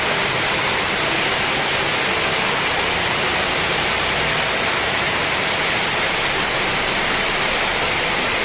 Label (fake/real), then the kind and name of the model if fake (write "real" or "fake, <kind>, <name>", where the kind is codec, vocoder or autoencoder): real